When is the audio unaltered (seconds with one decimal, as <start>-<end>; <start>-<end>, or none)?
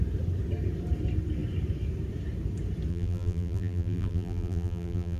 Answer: 0.0-2.9